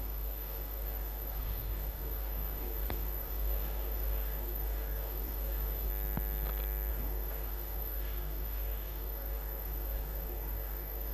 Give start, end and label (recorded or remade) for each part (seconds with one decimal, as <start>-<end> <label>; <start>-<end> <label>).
0.0-5.9 remade; 5.9-6.9 recorded; 6.9-11.1 remade